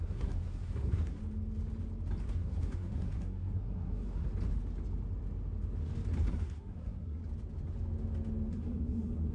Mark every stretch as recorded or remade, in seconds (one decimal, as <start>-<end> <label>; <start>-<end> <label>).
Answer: 0.0-1.2 remade; 1.2-2.4 recorded; 2.4-4.3 remade; 4.3-6.3 recorded; 6.3-7.2 remade; 7.2-8.5 recorded; 8.5-9.3 remade